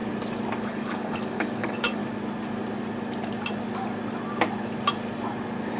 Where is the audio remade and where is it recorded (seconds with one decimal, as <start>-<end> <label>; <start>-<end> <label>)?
0.0-0.6 recorded; 0.6-2.0 remade; 2.0-5.8 recorded